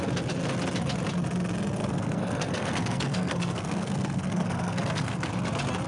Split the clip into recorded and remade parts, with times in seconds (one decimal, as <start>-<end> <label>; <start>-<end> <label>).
0.0-1.8 recorded; 1.8-5.3 remade; 5.3-5.9 recorded